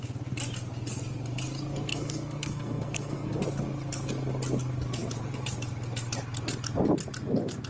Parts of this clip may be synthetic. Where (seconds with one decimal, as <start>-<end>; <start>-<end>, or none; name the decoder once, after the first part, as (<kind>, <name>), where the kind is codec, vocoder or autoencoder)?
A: 1.9-3.4 (codec, SNAC)